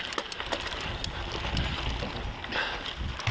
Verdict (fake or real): real